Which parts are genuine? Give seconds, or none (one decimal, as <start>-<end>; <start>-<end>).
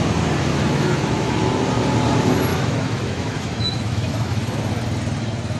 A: 0.0-0.5; 1.3-2.5; 4.7-5.6